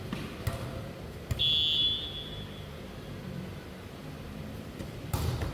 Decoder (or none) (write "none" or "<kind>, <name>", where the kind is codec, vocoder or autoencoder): none